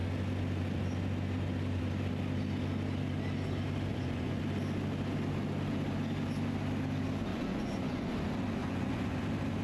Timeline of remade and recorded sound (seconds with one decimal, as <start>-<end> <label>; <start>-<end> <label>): 0.0-3.9 recorded; 3.9-4.4 remade; 4.4-7.3 recorded; 7.3-8.1 remade; 8.1-8.6 recorded; 8.6-9.2 remade; 9.2-9.6 recorded